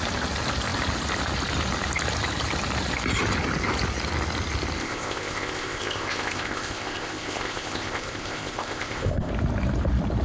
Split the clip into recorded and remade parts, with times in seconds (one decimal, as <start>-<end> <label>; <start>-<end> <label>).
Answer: 0.0-4.8 recorded; 4.8-9.3 remade; 9.3-10.2 recorded